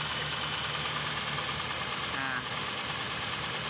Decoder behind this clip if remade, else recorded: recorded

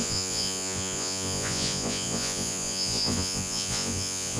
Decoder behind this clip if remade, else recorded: remade, vocoder, Vocos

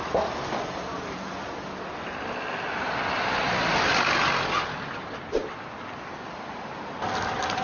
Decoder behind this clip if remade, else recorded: recorded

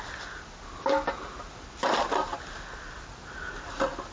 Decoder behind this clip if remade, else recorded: recorded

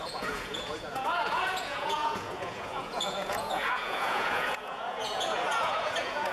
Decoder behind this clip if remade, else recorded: remade, vocoder, Vocos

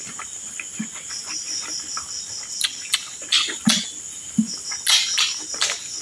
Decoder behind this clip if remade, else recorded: recorded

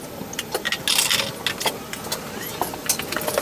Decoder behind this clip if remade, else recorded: recorded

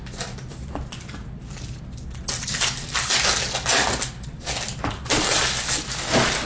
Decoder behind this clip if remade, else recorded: recorded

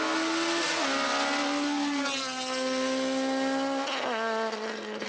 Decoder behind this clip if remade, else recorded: recorded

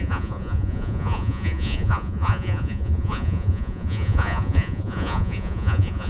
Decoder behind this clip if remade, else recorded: remade, vocoder, Vocos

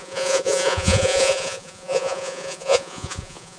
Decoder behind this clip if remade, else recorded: remade, vocoder, Vocos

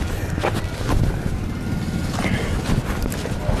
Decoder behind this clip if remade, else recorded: recorded